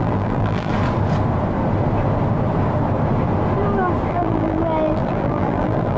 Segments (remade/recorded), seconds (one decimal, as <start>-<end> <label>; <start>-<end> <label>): 0.0-0.7 remade; 0.7-4.1 recorded; 4.1-6.0 remade